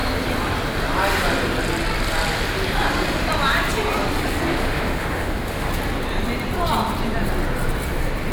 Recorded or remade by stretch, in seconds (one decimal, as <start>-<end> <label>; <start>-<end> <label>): 0.0-4.5 recorded; 4.5-5.7 remade; 5.7-8.3 recorded

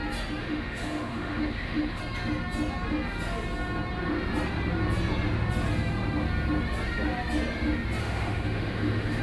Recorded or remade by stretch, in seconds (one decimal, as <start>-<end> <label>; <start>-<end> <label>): 0.0-0.4 recorded; 0.4-2.0 remade; 2.0-8.0 recorded; 8.0-9.2 remade

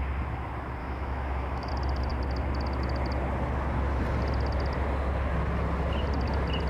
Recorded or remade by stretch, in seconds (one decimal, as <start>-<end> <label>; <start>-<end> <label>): 0.0-0.8 recorded; 0.8-1.7 remade; 1.7-6.7 recorded

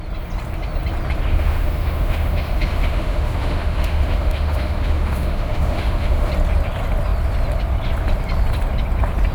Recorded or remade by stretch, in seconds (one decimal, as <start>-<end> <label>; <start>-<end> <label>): 0.0-1.3 recorded; 1.3-6.3 remade; 6.3-9.3 recorded

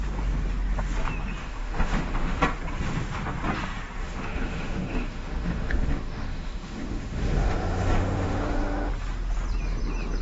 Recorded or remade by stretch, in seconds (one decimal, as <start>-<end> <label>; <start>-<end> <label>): 0.0-1.4 recorded; 1.4-2.4 remade; 2.4-4.0 recorded; 4.0-8.9 remade; 8.9-10.2 recorded